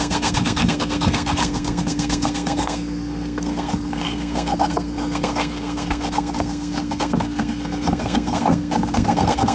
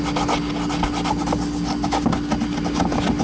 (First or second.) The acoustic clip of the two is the second